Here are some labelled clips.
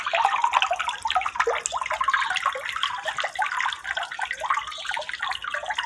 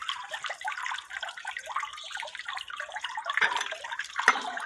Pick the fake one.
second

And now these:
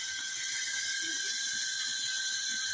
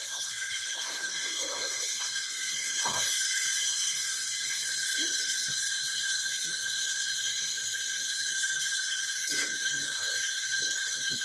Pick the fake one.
second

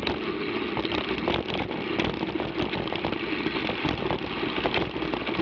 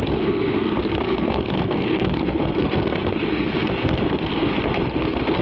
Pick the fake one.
second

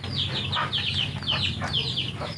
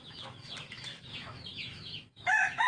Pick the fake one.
second